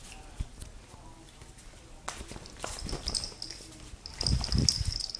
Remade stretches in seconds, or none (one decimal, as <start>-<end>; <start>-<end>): 0.0-5.2